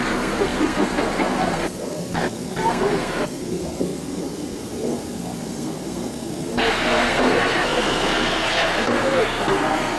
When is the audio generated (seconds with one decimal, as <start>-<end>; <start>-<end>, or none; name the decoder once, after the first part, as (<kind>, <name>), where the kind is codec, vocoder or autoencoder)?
0.0-10.0 (codec, SNAC)